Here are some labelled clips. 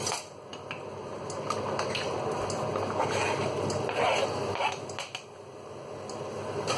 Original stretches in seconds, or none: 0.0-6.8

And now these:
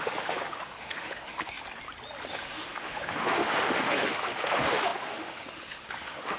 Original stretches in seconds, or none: 1.6-2.3

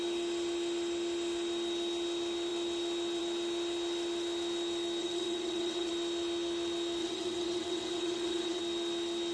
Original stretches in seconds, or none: 0.0-5.0; 5.9-7.0; 8.6-9.3

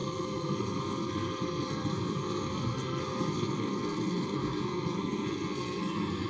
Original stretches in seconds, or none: none

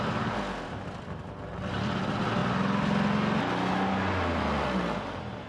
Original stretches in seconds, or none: 0.0-5.5

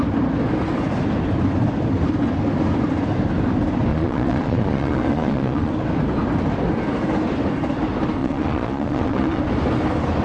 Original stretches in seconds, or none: 0.0-3.9; 5.7-8.2; 9.4-10.2